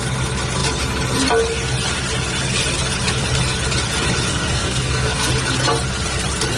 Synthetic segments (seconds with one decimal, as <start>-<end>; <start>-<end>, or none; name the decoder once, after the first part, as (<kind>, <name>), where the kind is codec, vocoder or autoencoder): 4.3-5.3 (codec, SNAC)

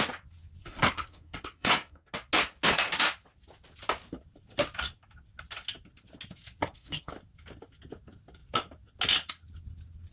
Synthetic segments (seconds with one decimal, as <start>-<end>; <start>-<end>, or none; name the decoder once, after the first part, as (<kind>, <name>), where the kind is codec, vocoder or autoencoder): 0.6-2.1 (codec, SNAC); 6.6-7.1

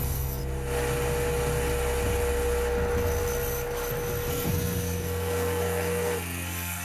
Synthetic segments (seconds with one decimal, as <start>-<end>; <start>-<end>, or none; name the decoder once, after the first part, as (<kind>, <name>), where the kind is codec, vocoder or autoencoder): 0.0-0.4 (codec, SNAC); 4.3-6.8

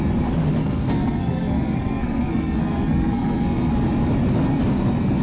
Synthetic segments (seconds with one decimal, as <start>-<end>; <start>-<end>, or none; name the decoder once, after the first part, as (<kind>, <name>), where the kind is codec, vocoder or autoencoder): 0.6-3.7 (codec, SNAC)

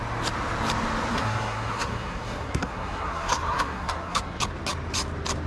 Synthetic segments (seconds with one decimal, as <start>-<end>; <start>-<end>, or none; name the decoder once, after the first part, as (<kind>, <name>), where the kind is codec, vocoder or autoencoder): 1.1-4.4 (codec, SNAC)

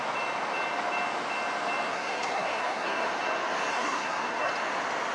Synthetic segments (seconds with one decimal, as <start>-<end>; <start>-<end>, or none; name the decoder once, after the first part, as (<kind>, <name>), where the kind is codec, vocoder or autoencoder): 1.9-3.1 (codec, SNAC); 3.7-4.5